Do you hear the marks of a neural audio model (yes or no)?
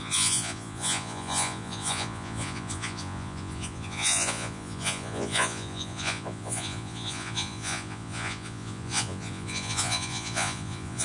yes